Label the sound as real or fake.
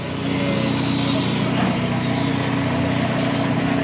real